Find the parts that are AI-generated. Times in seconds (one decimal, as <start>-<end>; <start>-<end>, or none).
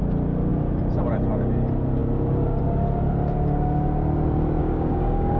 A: 4.6-5.4